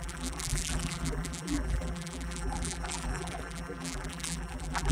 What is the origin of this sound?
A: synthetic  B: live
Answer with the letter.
A